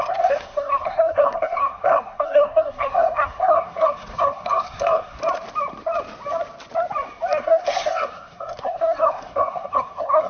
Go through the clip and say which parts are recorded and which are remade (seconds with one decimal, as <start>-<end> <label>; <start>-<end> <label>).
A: 0.0-5.2 remade; 5.2-7.4 recorded; 7.4-10.3 remade